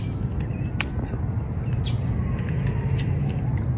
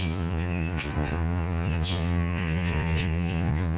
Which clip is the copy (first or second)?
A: second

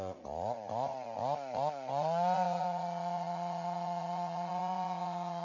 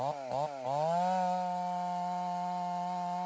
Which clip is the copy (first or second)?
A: first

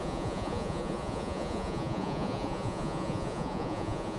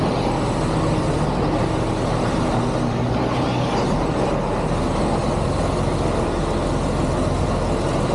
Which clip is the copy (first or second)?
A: first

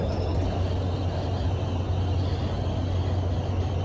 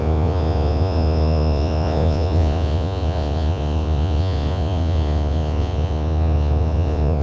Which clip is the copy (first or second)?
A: second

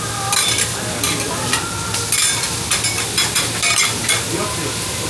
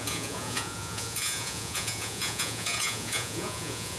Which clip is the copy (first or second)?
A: second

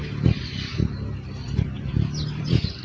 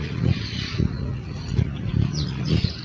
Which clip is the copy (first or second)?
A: second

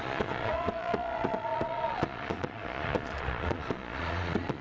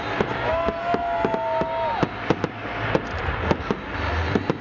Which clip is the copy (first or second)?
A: first